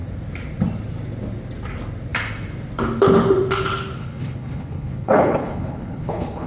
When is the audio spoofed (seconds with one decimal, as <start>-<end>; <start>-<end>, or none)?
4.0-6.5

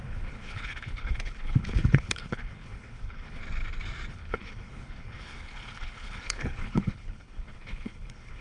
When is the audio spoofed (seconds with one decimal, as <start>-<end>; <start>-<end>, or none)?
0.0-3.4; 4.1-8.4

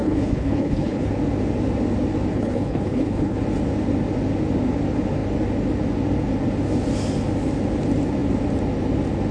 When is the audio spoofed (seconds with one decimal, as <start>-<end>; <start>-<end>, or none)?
0.0-1.1; 2.3-3.4

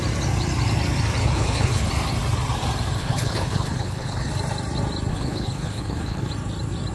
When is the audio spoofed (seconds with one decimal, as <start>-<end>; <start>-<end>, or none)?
1.2-1.9; 3.0-4.3; 5.1-6.3